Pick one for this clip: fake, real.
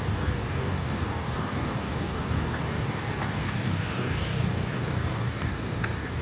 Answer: fake